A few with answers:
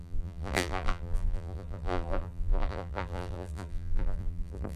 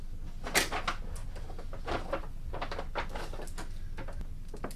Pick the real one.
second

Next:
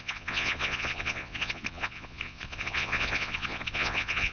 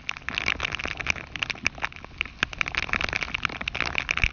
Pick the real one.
second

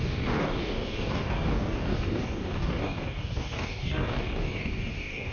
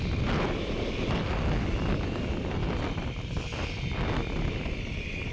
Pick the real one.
second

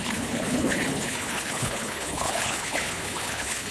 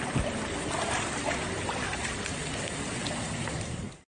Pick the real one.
second